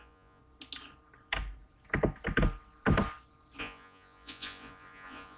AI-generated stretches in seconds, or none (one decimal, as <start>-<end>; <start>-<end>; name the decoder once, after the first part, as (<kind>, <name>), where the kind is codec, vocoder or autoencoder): 0.0-0.4 (vocoder, Vocos); 3.6-5.4